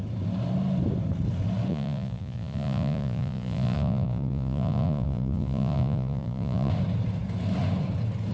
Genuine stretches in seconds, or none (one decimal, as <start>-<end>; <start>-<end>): 0.0-1.7; 6.7-8.3

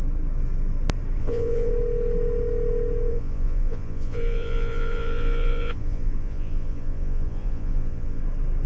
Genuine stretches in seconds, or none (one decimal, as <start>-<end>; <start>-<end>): 0.0-1.2; 1.7-3.1; 8.2-8.7